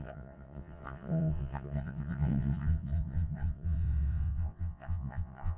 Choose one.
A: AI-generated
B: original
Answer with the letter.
A